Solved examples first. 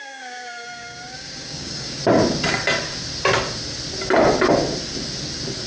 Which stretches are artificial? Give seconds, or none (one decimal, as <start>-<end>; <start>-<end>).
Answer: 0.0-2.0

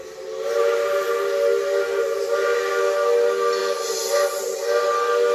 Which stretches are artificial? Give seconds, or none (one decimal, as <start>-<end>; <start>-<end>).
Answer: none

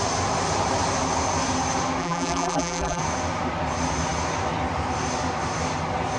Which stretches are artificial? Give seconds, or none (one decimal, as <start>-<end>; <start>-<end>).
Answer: 2.0-3.0